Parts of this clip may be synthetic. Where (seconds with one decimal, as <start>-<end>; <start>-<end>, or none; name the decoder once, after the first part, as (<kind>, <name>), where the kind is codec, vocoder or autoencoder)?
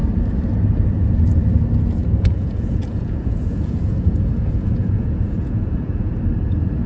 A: 2.0-6.1 (vocoder, Vocos)